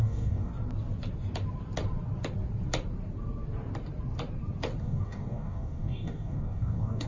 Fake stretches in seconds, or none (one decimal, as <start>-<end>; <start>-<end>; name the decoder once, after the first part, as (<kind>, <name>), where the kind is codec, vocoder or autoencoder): 0.0-0.5 (codec, DAC); 4.8-7.1

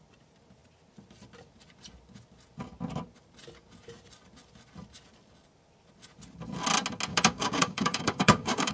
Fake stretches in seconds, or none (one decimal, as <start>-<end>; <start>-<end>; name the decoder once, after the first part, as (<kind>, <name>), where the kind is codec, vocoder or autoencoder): 7.1-8.7 (codec, DAC)

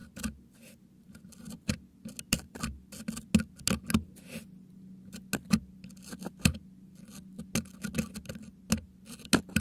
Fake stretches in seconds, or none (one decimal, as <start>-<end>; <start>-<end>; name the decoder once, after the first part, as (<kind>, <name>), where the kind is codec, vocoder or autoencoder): none

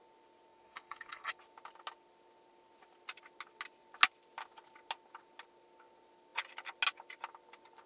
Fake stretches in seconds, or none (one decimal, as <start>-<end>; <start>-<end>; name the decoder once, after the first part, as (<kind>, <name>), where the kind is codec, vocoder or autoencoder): 0.5-1.4 (codec, DAC)

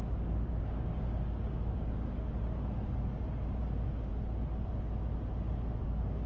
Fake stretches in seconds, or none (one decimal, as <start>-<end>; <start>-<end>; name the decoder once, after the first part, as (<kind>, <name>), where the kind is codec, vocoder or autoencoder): 0.0-2.1 (codec, DAC); 3.6-4.1; 5.8-6.3

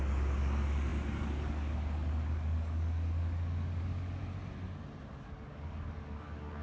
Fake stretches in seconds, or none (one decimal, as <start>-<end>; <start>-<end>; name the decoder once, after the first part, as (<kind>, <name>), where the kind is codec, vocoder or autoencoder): 0.0-4.2 (codec, DAC); 5.1-6.6

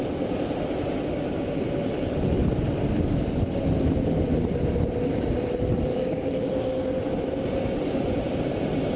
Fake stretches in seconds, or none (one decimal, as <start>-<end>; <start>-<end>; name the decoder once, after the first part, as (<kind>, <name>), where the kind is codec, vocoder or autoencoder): 5.9-7.0 (codec, DAC)